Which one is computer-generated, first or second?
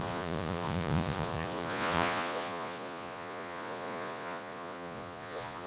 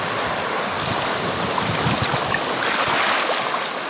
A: first